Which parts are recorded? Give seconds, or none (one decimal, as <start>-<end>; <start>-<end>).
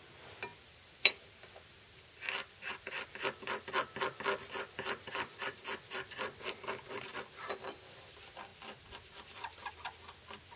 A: 0.0-10.6